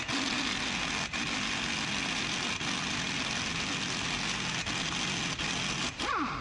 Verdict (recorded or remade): recorded